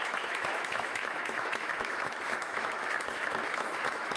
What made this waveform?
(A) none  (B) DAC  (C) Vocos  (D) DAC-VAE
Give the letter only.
D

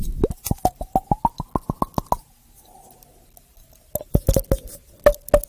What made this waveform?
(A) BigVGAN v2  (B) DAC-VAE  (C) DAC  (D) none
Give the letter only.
D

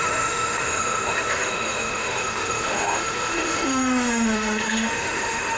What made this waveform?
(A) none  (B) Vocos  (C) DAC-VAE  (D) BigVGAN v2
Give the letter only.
C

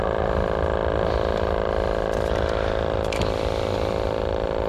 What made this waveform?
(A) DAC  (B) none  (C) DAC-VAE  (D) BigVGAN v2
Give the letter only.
B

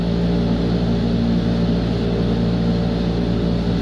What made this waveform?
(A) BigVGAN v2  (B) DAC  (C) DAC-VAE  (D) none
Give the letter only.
D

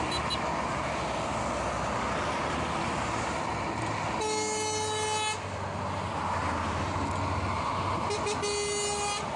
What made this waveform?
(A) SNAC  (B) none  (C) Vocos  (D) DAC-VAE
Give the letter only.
B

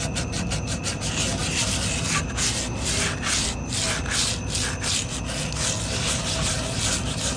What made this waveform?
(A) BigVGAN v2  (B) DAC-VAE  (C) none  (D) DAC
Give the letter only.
C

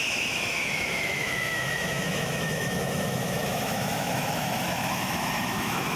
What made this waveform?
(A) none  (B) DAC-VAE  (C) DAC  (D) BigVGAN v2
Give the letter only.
B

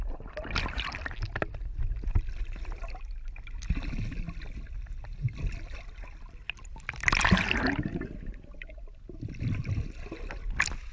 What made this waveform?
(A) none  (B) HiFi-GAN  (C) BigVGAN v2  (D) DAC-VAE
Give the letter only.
A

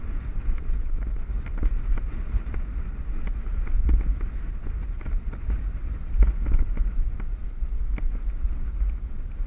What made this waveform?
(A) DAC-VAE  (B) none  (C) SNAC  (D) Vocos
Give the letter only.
B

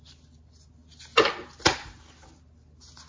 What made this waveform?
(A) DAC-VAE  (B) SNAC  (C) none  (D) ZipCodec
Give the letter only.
C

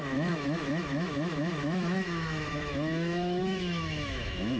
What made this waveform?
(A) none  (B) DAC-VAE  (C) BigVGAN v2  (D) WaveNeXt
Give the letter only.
B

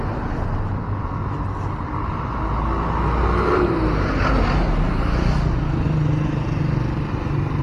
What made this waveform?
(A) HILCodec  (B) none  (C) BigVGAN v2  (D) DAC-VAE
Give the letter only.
B